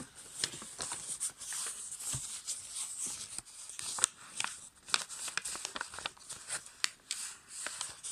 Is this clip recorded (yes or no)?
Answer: yes